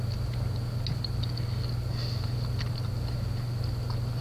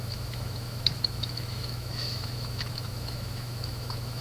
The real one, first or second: first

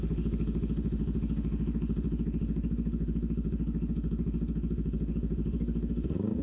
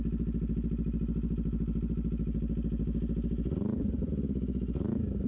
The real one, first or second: second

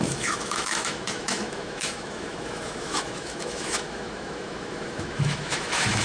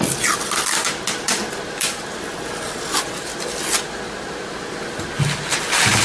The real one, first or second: second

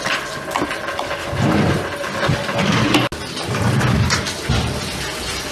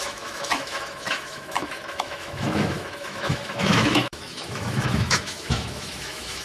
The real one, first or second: first